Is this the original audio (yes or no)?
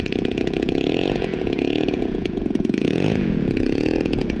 no